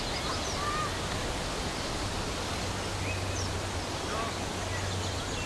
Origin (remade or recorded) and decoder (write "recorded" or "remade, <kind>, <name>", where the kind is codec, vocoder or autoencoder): recorded